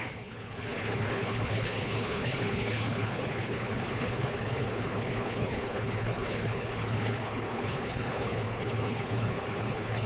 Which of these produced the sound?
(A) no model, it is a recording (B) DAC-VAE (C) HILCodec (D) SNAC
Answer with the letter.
C